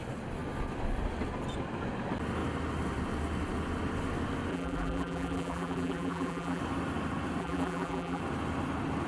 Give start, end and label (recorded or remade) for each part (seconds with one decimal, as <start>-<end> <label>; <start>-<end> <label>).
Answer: 0.0-4.5 recorded; 4.5-6.6 remade; 6.6-7.4 recorded; 7.4-8.2 remade; 8.2-9.1 recorded